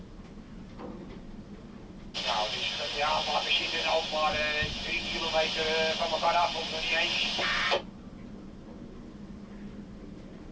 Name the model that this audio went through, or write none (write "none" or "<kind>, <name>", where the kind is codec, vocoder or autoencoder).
none